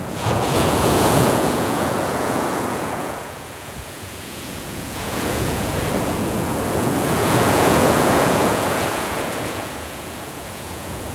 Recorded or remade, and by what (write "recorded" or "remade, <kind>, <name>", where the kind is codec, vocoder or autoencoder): remade, vocoder, Vocos